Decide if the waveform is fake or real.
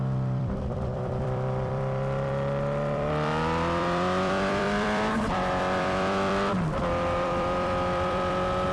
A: fake